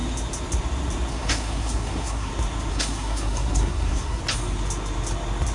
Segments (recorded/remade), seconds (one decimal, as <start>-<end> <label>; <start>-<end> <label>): 0.0-1.1 recorded; 1.1-2.3 remade; 2.3-2.7 recorded; 2.7-4.2 remade; 4.2-5.5 recorded

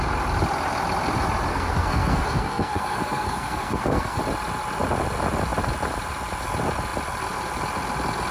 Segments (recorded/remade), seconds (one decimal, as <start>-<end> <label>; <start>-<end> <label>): 0.0-1.5 recorded; 1.5-4.2 remade; 4.2-8.3 recorded

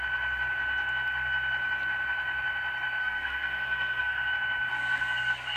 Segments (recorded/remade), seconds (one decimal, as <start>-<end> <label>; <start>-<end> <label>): 0.0-3.0 recorded; 3.0-4.3 remade; 4.3-4.7 recorded; 4.7-5.6 remade

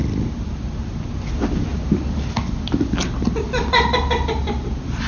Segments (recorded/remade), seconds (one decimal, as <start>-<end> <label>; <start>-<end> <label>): 0.0-5.1 recorded